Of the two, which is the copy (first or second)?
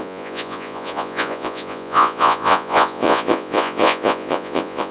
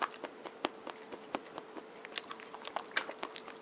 first